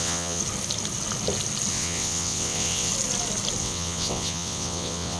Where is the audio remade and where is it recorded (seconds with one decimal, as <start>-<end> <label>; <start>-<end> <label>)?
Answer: 0.0-0.4 remade; 0.4-1.7 recorded; 1.7-2.9 remade; 2.9-3.6 recorded; 3.6-5.2 remade